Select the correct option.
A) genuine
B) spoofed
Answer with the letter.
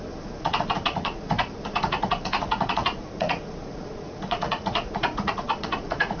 B